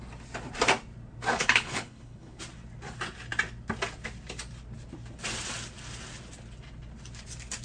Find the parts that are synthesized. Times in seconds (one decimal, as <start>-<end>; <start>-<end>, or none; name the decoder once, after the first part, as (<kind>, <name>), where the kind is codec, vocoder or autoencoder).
1.3-2.4 (codec, HILCodec)